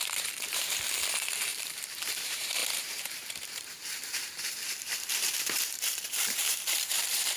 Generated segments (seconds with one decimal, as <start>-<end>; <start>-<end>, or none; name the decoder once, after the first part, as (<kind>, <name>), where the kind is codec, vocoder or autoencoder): 0.0-7.4 (vocoder, BigVGAN v2)